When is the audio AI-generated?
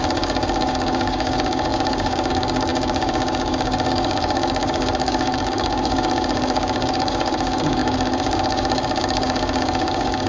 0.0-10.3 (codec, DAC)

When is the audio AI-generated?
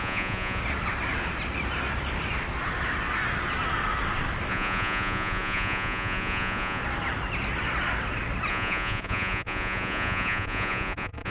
0.0-0.6 (vocoder, Vocos); 4.5-6.8; 8.5-11.3